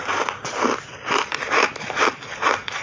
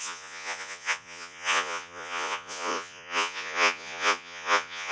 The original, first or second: first